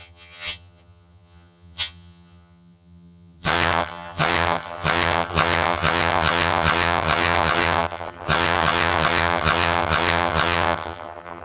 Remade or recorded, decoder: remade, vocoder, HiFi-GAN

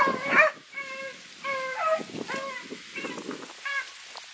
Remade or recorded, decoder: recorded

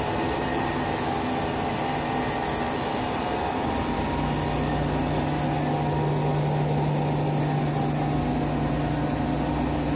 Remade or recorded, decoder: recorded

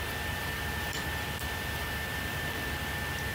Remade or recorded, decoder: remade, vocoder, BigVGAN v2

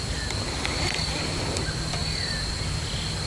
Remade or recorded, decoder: recorded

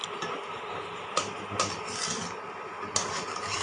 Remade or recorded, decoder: recorded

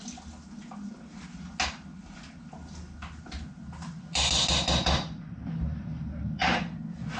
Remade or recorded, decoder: recorded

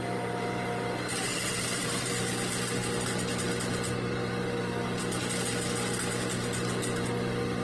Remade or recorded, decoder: recorded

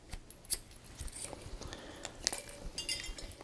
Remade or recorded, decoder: recorded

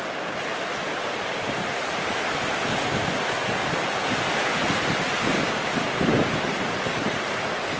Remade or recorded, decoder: recorded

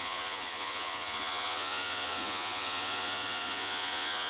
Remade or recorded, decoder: remade, vocoder, Vocos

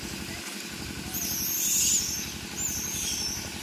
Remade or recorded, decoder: recorded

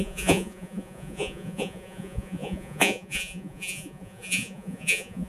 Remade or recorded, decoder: remade, vocoder, Vocos